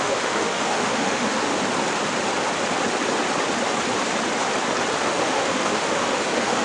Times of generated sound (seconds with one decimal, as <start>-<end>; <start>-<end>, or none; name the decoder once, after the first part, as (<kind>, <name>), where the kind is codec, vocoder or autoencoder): 0.0-1.5 (autoencoder, DAC-VAE); 5.0-6.6